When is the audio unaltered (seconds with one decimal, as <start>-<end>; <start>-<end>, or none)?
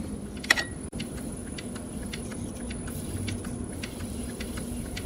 1.4-1.9; 2.3-3.7